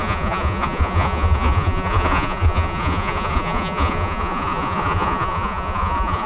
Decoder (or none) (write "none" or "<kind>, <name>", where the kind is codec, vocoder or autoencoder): vocoder, Vocos